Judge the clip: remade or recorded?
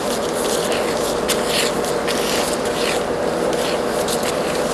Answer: recorded